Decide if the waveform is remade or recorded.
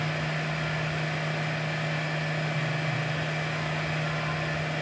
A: recorded